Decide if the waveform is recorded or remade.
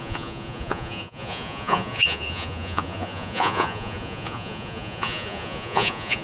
remade